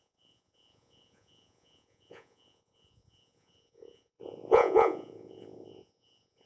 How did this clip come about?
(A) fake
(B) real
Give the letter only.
A